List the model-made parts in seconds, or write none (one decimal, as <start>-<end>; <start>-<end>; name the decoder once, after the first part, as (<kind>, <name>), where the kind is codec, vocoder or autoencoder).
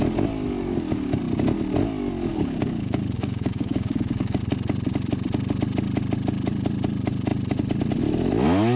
0.7-1.2 (codec, DAC); 2.3-4.4